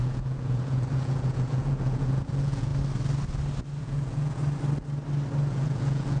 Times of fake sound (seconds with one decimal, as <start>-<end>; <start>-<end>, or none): 0.0-2.7; 3.8-4.4; 5.5-6.2